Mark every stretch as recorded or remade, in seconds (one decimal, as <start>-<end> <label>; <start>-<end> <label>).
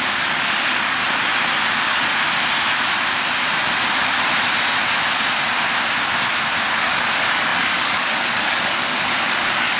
0.0-1.0 remade; 1.0-1.7 recorded; 1.7-2.1 remade; 2.1-6.7 recorded; 6.7-9.8 remade